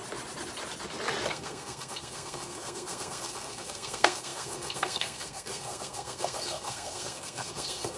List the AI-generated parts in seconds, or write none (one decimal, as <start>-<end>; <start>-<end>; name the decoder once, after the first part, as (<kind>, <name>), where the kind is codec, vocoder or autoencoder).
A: 1.3-8.0 (codec, SNAC)